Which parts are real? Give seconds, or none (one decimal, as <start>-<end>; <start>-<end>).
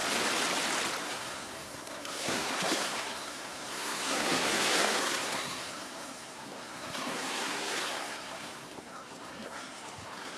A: 0.0-1.0